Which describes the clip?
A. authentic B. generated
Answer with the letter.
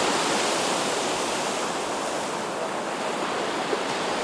A